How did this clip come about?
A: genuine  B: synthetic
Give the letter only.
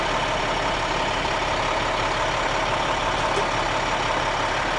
A